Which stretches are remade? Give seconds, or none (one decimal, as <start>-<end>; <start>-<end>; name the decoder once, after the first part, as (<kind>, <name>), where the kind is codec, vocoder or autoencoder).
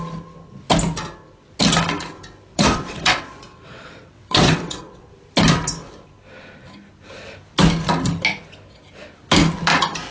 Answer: 2.5-5.1 (vocoder, WaveNeXt)